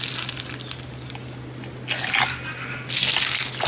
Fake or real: real